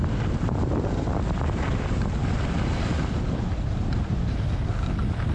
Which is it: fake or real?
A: real